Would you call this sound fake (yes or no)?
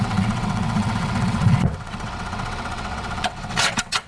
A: yes